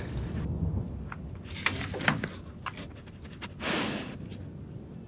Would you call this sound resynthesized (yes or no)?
no